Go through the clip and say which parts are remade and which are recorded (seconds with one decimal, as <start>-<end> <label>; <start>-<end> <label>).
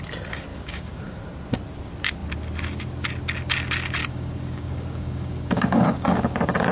0.0-0.5 recorded; 0.5-1.1 remade; 1.1-4.0 recorded; 4.0-6.7 remade